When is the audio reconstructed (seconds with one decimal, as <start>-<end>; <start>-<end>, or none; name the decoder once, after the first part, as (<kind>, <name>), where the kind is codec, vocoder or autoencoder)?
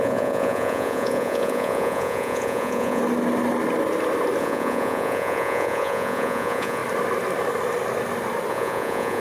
0.0-3.0 (vocoder, Vocos); 4.4-6.8; 8.5-9.2